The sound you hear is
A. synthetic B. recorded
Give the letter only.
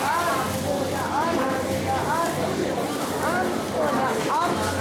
B